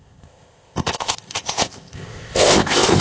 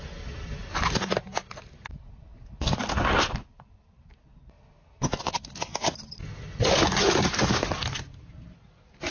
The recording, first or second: second